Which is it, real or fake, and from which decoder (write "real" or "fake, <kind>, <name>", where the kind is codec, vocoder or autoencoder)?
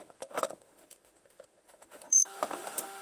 fake, autoencoder, DAC-VAE